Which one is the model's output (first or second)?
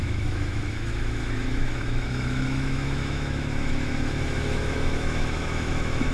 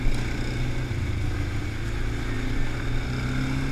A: first